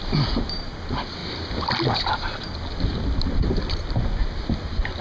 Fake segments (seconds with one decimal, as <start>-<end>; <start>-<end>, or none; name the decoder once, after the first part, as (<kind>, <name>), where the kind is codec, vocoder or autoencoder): none